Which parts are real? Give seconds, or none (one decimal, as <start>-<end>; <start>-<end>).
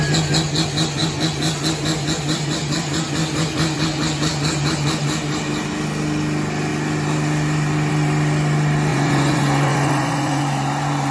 0.0-8.9; 10.4-11.1